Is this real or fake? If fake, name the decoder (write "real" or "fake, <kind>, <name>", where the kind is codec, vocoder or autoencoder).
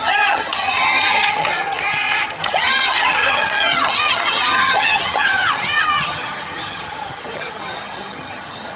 fake, vocoder, HiFi-GAN